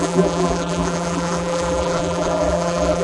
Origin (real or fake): fake